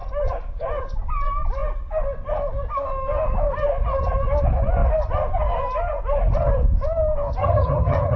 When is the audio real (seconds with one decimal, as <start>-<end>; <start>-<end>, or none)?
0.0-7.4